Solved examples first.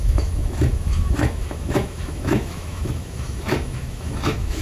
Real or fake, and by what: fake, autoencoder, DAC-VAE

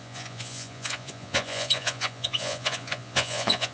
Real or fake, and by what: fake, vocoder, Vocos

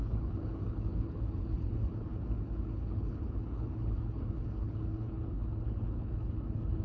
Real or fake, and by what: fake, codec, HILCodec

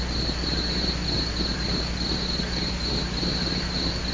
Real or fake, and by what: real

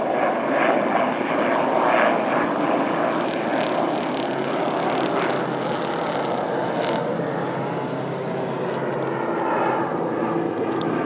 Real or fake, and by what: real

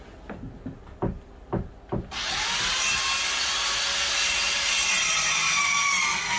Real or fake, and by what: real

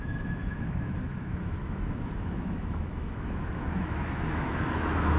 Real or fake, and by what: fake, autoencoder, DAC-VAE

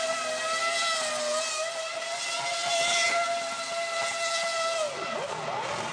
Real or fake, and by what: real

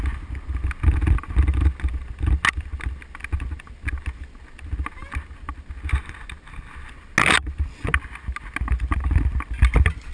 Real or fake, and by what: real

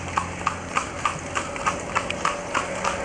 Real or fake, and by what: real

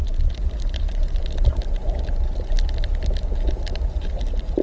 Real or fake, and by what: real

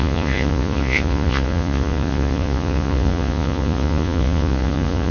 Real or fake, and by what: fake, vocoder, Vocos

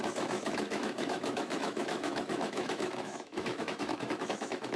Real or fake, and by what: fake, autoencoder, DAC-VAE